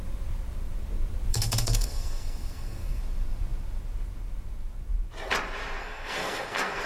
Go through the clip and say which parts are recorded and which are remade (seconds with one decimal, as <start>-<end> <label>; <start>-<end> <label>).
0.0-1.3 recorded; 1.3-3.0 remade; 3.0-5.8 recorded; 5.8-6.9 remade